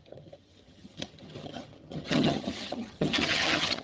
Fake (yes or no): yes